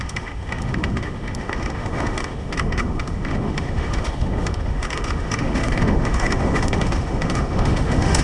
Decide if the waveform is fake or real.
fake